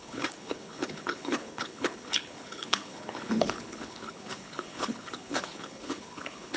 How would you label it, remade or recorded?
remade